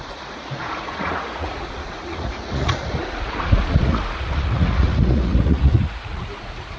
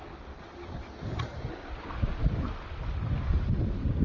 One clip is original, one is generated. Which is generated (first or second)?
first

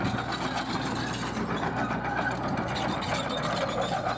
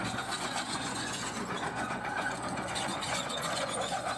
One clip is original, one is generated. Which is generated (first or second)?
second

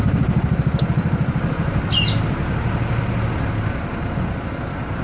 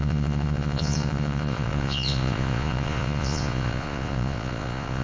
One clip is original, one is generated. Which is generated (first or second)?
second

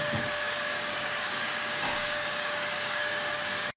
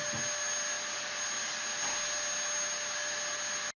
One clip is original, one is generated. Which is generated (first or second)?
first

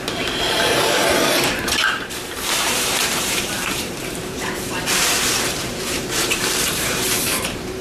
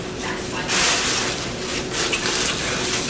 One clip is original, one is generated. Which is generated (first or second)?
first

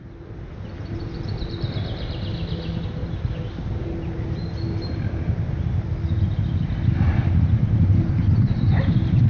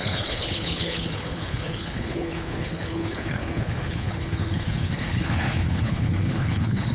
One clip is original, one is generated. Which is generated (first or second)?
second